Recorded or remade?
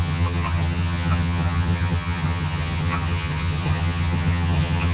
remade